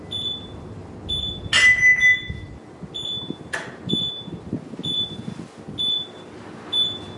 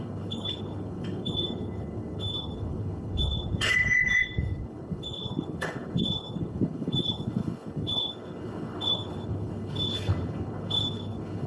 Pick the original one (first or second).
first